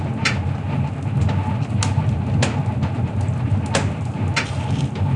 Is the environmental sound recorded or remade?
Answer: recorded